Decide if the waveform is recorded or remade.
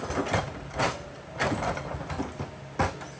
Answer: recorded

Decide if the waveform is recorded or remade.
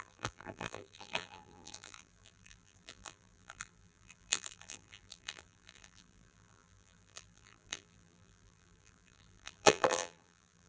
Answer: remade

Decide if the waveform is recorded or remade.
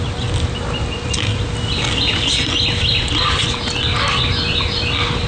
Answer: recorded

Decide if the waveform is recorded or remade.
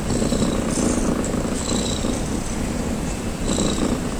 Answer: recorded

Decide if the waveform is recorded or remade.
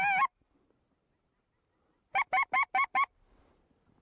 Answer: recorded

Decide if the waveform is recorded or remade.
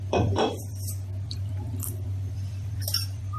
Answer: remade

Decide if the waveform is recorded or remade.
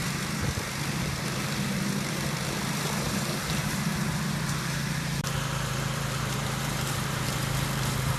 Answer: remade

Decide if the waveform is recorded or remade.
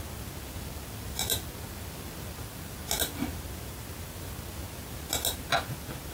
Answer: recorded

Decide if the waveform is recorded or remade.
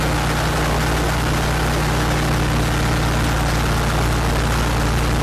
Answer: recorded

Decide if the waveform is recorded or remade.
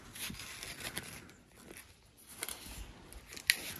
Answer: recorded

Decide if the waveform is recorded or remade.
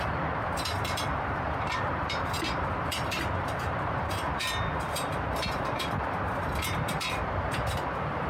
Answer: remade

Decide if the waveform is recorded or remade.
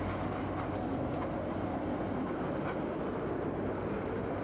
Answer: recorded